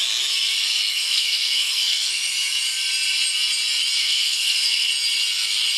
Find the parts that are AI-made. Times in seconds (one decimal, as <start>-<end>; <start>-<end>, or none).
0.9-2.3; 4.0-4.9